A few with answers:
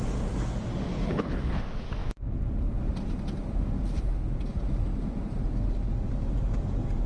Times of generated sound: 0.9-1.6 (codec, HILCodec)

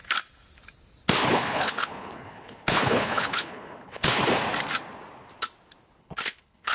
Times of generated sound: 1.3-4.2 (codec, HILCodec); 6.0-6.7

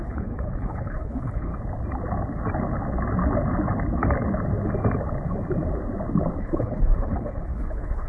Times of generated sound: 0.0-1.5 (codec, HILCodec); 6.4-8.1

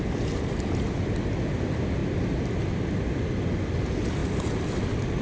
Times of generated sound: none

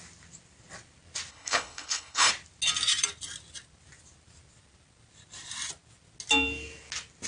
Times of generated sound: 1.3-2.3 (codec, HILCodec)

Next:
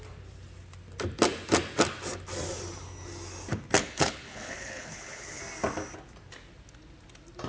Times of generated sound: 3.8-5.4 (codec, HILCodec)

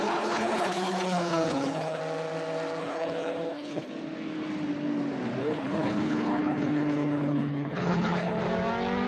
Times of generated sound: 0.0-2.0 (codec, HILCodec); 2.8-3.9; 5.4-8.4